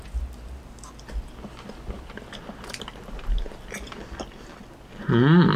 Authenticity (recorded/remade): recorded